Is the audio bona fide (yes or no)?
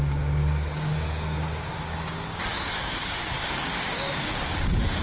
no